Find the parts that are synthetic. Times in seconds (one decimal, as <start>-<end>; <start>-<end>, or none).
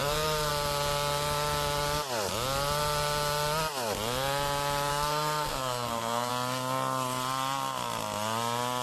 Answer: 0.0-0.5; 4.9-6.3